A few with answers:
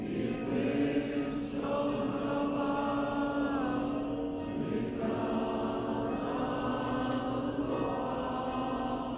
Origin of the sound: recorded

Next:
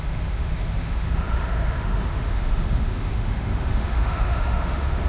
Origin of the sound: remade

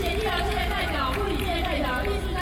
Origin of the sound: remade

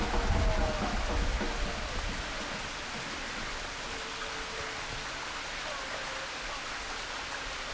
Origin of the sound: recorded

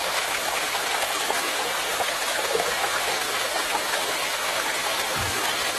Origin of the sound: remade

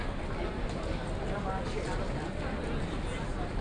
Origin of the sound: recorded